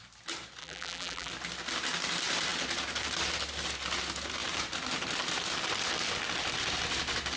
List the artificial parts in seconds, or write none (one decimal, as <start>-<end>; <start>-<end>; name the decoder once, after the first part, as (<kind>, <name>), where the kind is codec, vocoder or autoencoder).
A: 0.6-1.3 (vocoder, BigVGAN v2)